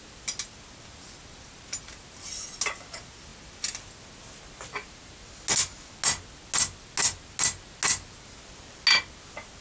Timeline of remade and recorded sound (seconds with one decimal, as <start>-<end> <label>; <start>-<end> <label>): 0.0-9.6 recorded